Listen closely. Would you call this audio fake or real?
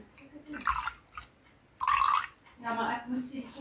real